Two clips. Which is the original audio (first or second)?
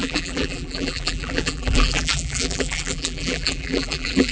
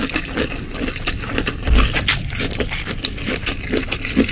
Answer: second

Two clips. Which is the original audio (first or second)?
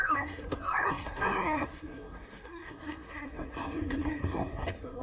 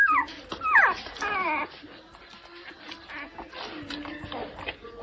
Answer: second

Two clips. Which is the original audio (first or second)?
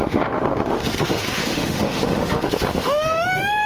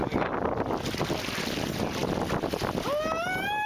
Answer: second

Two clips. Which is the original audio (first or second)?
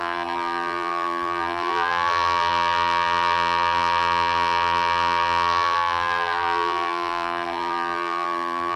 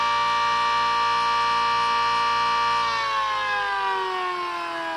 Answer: second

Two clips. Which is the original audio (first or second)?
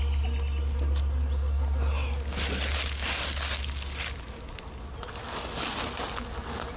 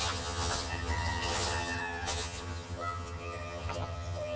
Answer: first